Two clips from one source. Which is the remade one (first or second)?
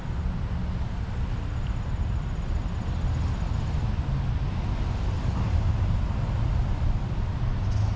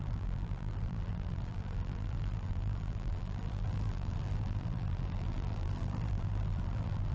second